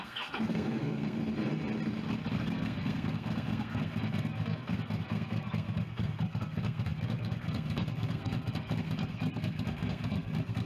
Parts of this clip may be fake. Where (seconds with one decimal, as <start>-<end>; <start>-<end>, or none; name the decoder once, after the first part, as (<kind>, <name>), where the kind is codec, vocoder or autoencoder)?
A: 0.0-1.2 (codec, SNAC); 2.3-10.7